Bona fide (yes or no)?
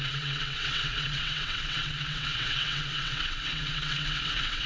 no